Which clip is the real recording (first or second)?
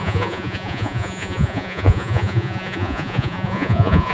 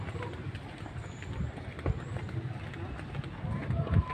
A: second